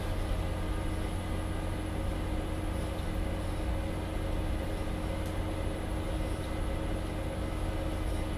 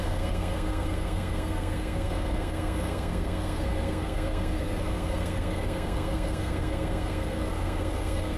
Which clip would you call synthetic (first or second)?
second